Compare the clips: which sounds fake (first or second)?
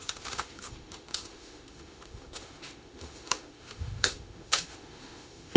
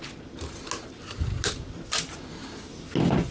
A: first